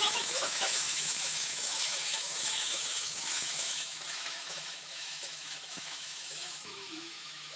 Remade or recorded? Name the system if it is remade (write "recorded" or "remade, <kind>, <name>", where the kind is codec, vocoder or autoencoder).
remade, autoencoder, DAC-VAE